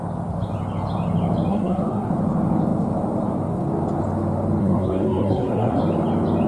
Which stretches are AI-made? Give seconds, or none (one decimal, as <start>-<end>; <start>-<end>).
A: 1.5-2.1; 4.6-5.8